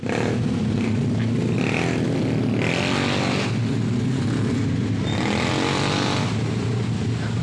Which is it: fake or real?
real